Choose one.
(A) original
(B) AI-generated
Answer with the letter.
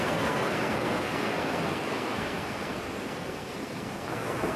B